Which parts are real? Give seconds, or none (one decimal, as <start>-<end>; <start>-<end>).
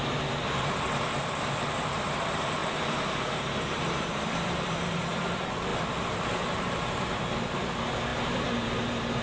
none